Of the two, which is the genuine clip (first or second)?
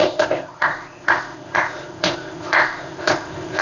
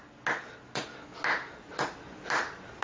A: second